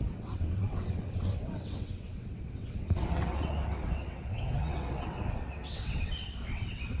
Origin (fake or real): fake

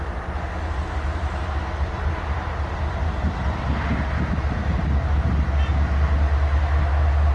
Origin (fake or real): real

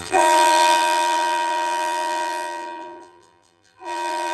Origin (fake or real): fake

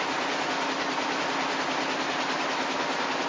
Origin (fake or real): real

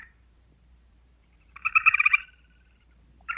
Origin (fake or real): fake